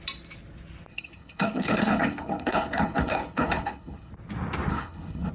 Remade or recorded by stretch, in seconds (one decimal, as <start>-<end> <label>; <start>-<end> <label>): 0.0-0.9 recorded; 0.9-4.1 remade; 4.1-4.7 recorded; 4.7-5.3 remade